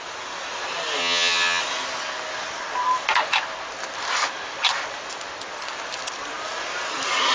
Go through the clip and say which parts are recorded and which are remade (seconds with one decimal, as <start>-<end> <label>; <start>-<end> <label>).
0.0-1.0 recorded; 1.0-1.6 remade; 1.6-7.3 recorded